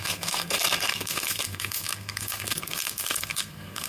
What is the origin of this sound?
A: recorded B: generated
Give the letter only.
B